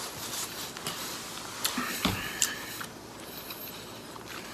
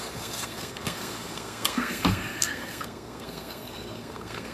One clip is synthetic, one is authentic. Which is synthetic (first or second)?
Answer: second